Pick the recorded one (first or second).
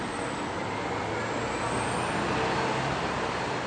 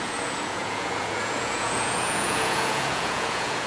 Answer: first